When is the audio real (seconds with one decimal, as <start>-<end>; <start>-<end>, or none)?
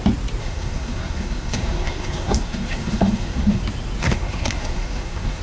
0.0-0.4; 3.6-4.0